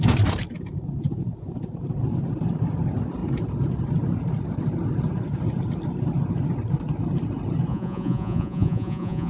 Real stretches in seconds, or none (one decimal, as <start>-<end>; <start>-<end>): 0.0-7.7